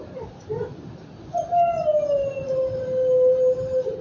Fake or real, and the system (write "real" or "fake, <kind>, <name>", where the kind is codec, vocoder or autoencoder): real